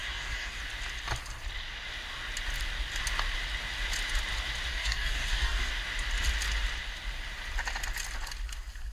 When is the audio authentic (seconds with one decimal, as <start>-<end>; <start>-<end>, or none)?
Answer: 0.6-4.7; 5.7-8.9